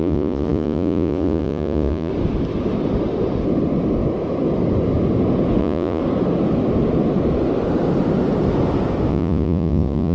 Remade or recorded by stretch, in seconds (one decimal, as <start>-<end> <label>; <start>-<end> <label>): 0.0-2.1 remade; 2.1-5.6 recorded; 5.6-6.0 remade; 6.0-9.1 recorded; 9.1-10.1 remade